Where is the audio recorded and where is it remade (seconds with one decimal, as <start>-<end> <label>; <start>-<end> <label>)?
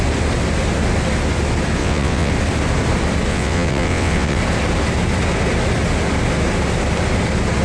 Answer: 0.0-1.8 recorded; 1.8-2.3 remade; 2.3-3.3 recorded; 3.3-4.4 remade; 4.4-7.6 recorded